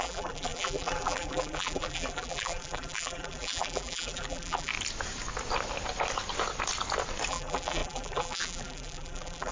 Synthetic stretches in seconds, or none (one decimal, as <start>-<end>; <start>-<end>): 0.0-4.7; 7.3-9.5